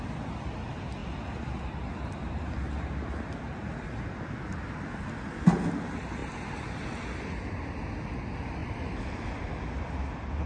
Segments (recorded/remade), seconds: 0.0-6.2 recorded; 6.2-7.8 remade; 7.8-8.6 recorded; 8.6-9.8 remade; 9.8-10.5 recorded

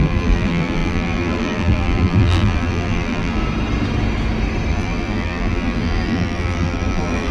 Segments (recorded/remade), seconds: 0.0-3.4 remade; 3.4-4.7 recorded; 4.7-7.3 remade

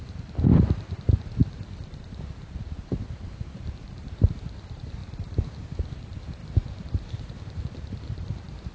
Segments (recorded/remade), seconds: 0.0-5.0 remade; 5.0-5.9 recorded; 5.9-8.7 remade

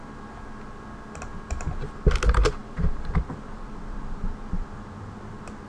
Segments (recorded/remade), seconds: 0.0-5.7 recorded

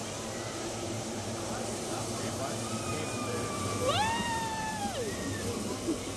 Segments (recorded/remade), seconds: 0.0-2.4 remade; 2.4-2.9 recorded; 2.9-4.8 remade; 4.8-6.2 recorded